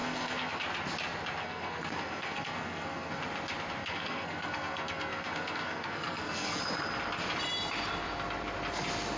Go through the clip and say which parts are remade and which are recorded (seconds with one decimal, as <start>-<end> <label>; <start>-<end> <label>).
0.0-0.5 remade; 0.5-1.4 recorded; 1.4-3.2 remade; 3.2-3.8 recorded; 3.8-6.6 remade; 6.6-9.2 recorded